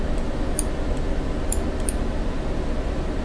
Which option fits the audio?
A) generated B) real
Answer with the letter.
B